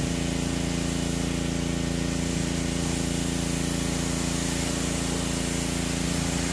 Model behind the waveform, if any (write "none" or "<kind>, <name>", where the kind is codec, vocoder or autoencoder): none